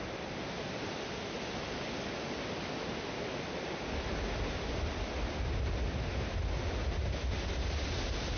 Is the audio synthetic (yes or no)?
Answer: no